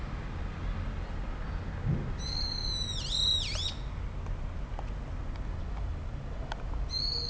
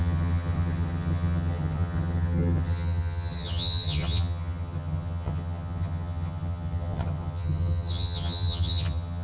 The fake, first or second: second